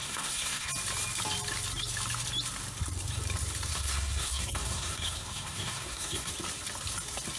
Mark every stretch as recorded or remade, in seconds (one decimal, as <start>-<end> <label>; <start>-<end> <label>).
0.0-0.7 remade; 0.7-3.7 recorded; 3.7-6.3 remade; 6.3-7.4 recorded